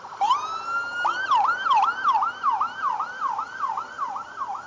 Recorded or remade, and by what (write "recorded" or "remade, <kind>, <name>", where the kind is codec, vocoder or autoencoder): recorded